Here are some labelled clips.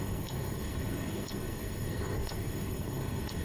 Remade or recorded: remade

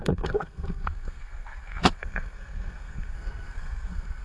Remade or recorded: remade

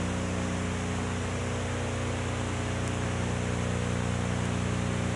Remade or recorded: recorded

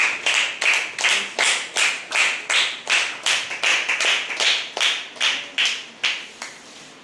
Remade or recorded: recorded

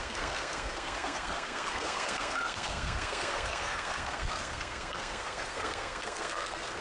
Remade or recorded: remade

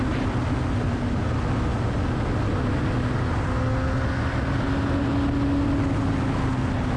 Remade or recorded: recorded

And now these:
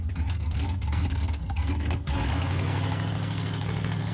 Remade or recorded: remade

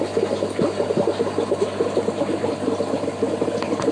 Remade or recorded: recorded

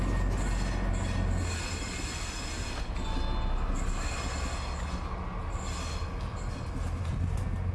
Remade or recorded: recorded